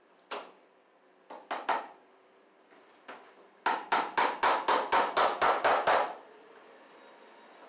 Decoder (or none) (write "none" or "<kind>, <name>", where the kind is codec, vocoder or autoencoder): none